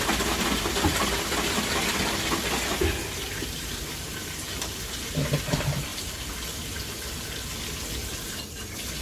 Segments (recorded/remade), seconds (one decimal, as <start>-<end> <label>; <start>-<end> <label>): 0.0-9.0 recorded